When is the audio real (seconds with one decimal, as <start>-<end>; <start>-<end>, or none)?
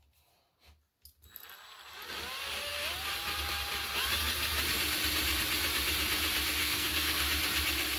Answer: 0.0-6.6; 7.2-8.0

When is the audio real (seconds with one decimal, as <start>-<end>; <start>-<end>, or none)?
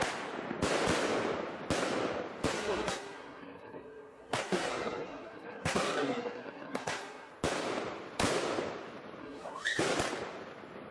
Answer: 0.0-2.5; 7.3-9.2; 9.8-10.9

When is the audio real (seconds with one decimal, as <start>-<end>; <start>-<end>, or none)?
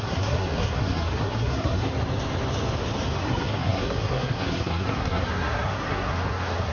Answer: 1.9-3.2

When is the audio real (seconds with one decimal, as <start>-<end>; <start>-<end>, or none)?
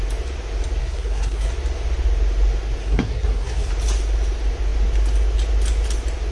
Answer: 0.0-0.8; 1.5-2.8; 3.7-6.3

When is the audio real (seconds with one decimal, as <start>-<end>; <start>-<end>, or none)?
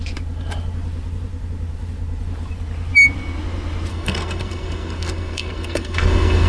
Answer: 0.0-3.9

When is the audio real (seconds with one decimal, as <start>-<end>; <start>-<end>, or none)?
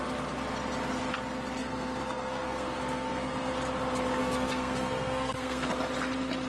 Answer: 0.0-1.6; 3.5-4.2; 5.7-6.5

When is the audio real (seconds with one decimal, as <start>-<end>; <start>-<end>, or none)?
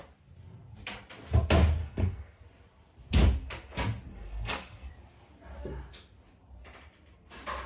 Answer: 0.0-1.8; 2.4-4.1; 4.9-7.7